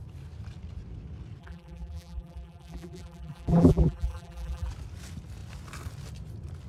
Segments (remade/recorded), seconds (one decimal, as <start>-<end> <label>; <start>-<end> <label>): 0.0-1.4 recorded; 1.4-4.7 remade; 4.7-6.7 recorded